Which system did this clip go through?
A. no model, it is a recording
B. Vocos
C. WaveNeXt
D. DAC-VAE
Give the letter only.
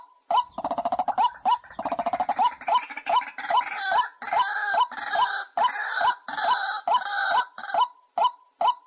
A